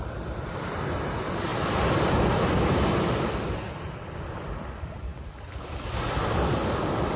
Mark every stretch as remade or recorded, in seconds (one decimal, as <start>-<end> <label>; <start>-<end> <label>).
0.0-7.2 recorded